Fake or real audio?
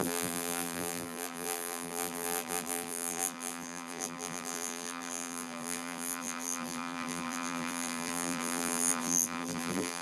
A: fake